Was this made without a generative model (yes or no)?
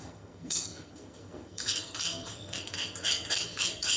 no